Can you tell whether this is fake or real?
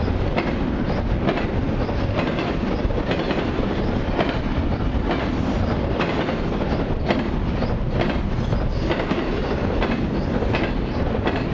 fake